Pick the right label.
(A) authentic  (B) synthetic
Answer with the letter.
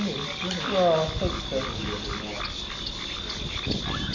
A